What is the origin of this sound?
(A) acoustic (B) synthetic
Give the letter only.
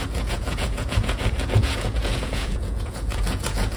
B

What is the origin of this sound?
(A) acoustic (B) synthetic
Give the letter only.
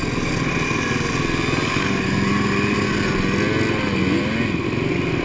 A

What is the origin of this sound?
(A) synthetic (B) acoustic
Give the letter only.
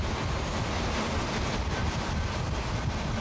B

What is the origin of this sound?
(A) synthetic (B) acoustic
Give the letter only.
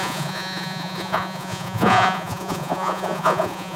A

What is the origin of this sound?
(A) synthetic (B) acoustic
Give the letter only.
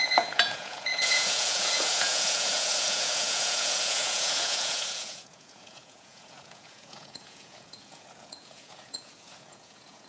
A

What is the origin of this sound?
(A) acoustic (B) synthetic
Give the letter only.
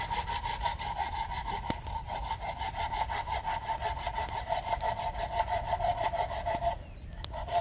A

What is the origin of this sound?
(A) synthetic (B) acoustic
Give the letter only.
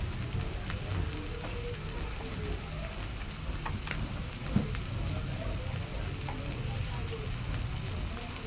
B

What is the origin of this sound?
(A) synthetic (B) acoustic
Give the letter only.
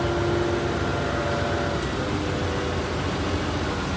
B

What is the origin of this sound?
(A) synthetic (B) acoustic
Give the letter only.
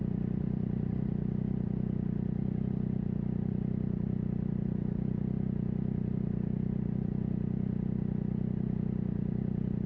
B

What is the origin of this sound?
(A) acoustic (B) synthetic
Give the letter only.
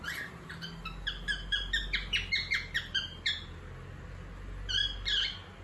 A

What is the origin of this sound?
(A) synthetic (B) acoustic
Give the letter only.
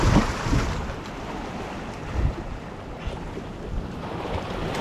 B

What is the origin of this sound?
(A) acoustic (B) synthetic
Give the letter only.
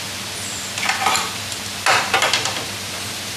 B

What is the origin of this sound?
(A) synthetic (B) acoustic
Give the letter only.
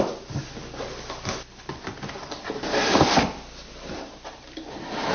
A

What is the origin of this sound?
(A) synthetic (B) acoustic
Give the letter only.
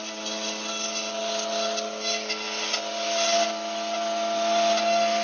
B